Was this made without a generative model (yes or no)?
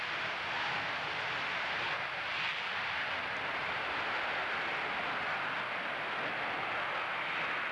yes